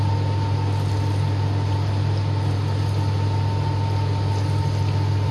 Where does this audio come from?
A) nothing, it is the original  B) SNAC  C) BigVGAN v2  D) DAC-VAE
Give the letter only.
A